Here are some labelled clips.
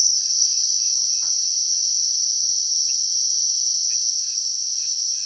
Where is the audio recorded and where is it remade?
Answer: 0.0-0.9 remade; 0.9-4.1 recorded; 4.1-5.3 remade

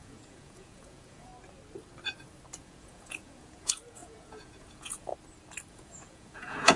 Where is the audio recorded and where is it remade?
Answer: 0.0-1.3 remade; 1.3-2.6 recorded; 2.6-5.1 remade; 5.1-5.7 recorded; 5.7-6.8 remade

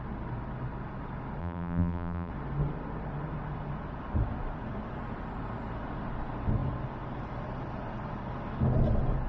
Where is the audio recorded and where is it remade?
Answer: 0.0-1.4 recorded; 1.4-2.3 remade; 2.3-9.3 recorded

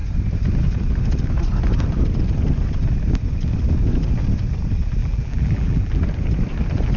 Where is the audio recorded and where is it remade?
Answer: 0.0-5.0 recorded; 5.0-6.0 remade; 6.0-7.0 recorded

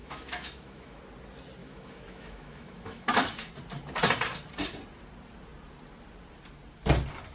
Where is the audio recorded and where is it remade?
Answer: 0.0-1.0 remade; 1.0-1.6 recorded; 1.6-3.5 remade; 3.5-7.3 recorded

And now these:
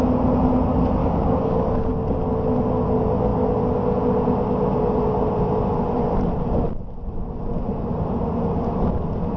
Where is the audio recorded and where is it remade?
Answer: 0.0-1.0 recorded; 1.0-1.9 remade; 1.9-9.4 recorded

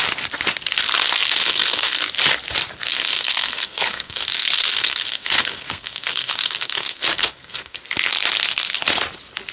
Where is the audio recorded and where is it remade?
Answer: 0.0-1.4 recorded; 1.4-2.1 remade; 2.1-2.9 recorded; 2.9-7.8 remade; 7.8-9.5 recorded

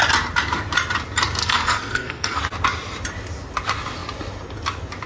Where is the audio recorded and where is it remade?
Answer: 0.0-1.4 recorded; 1.4-2.4 remade; 2.4-5.1 recorded